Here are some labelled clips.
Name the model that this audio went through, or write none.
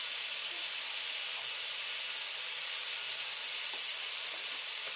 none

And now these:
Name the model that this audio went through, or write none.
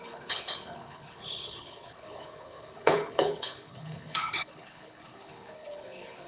codec, HILCodec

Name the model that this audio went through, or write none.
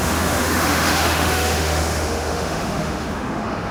autoencoder, DAC-VAE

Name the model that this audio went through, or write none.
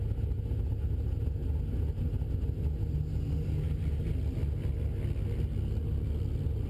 none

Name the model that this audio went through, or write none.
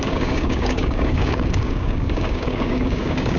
codec, DAC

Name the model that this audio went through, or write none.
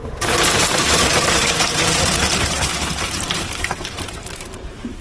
vocoder, BigVGAN v2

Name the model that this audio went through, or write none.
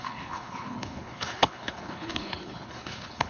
codec, HILCodec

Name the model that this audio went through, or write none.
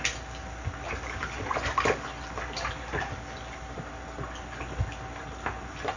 none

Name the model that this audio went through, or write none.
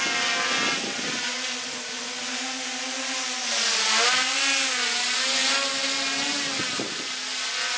none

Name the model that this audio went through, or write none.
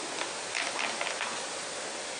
none